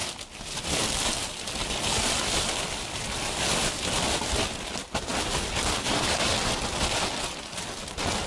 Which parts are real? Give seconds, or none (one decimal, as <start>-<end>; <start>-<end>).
0.0-8.3